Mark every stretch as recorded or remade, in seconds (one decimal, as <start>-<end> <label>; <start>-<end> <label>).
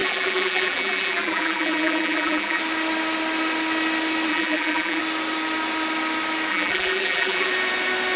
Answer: 0.0-2.6 remade; 2.6-4.3 recorded; 4.3-5.0 remade; 5.0-6.5 recorded; 6.5-7.5 remade; 7.5-8.2 recorded